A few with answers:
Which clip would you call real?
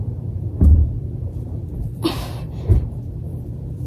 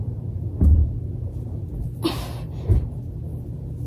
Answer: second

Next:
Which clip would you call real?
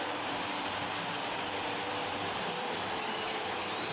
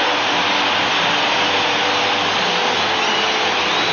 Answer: second